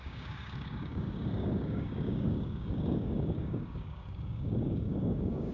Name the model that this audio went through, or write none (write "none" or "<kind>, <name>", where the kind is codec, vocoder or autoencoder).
codec, DAC